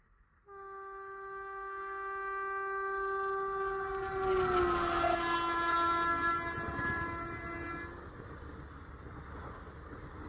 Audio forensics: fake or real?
real